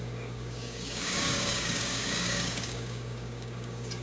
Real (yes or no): no